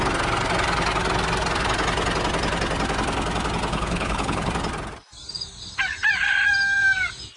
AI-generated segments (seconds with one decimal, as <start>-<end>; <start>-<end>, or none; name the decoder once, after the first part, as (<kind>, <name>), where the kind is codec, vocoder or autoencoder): 3.7-4.5 (codec, HILCodec)

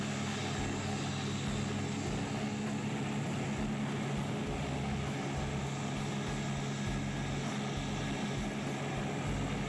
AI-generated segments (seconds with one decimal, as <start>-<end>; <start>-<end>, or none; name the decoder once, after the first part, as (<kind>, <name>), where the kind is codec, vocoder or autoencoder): none

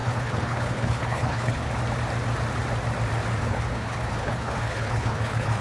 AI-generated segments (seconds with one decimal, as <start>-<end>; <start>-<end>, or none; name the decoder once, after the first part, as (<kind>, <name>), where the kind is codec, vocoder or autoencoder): 0.0-1.7 (codec, HILCodec); 3.4-5.6